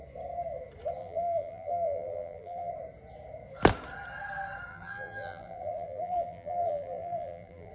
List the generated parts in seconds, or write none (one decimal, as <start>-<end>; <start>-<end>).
1.0-2.7; 4.7-7.7